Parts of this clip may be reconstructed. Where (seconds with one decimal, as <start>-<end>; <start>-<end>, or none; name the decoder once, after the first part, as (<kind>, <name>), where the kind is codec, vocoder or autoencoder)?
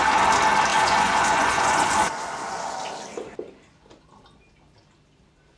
0.7-2.7 (vocoder, Vocos)